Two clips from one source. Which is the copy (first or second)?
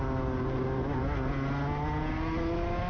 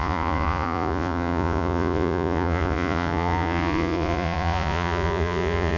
second